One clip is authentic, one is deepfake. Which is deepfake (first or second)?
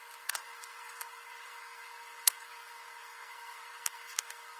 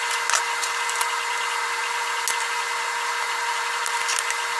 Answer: first